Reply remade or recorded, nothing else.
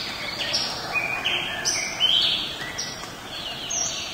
recorded